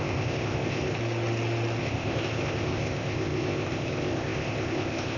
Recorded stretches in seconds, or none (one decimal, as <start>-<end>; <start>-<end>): 1.0-1.8